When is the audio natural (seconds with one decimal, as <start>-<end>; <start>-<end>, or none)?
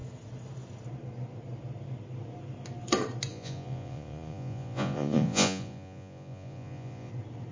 0.0-3.3; 7.1-7.5